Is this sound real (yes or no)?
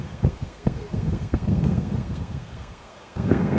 no